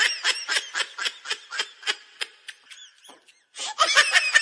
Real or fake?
real